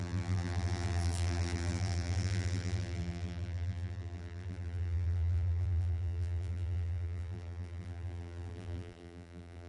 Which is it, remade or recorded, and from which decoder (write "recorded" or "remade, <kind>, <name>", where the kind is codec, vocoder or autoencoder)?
remade, vocoder, BigVGAN v2